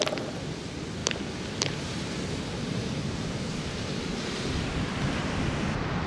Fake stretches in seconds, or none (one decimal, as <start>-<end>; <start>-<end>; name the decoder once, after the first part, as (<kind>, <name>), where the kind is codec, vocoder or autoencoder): 1.0-4.7 (vocoder, BigVGAN v2)